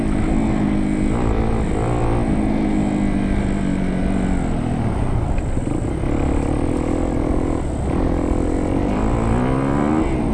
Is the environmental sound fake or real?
real